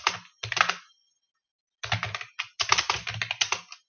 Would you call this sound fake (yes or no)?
no